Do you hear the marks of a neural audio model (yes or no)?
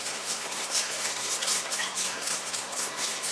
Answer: yes